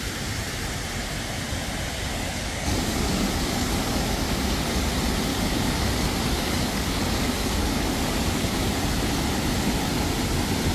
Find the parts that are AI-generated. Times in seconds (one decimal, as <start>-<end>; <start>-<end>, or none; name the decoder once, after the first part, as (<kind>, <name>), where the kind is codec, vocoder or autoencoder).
2.1-4.8 (codec, DAC); 5.3-8.7